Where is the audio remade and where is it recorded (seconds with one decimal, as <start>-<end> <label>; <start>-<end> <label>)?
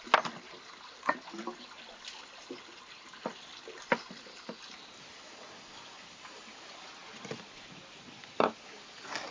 0.0-9.3 recorded